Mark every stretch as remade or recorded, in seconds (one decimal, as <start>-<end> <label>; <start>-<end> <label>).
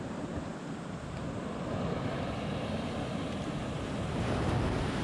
0.0-5.0 recorded